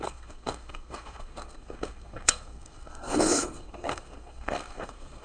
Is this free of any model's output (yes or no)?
no